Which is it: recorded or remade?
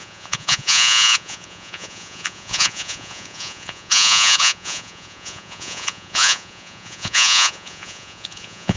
remade